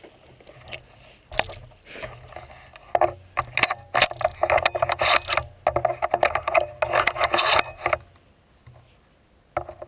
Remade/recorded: recorded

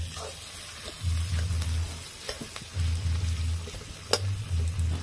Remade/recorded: recorded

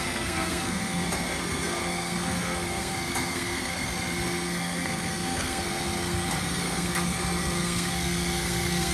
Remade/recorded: remade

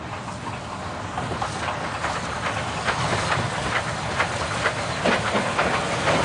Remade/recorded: recorded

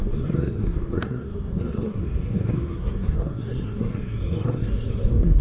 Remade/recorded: remade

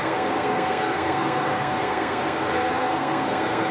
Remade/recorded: remade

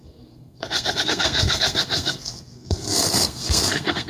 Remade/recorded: remade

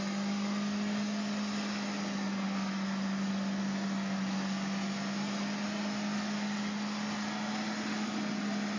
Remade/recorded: recorded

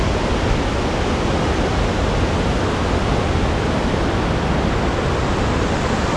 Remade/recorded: recorded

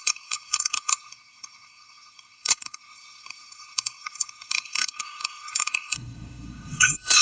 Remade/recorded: remade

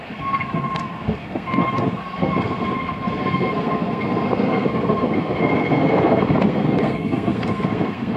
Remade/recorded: remade